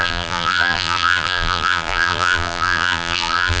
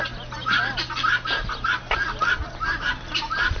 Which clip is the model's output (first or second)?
first